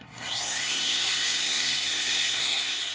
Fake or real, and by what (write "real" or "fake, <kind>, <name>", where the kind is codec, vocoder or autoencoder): fake, codec, SNAC